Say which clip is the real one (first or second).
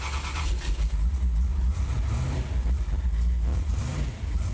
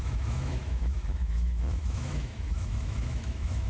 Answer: first